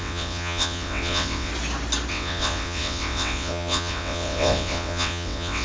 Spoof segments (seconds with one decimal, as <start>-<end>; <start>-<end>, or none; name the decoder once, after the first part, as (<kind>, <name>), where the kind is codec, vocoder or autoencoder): 0.0-1.5 (vocoder, WaveNeXt); 2.1-5.6